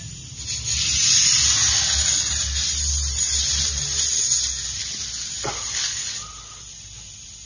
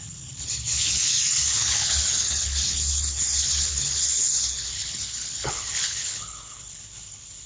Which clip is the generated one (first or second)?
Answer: second